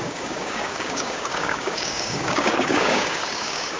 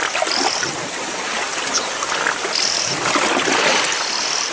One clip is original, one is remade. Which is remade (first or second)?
first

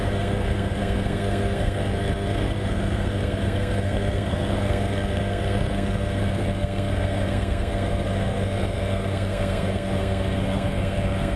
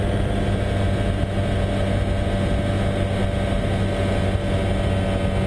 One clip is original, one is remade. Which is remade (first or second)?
first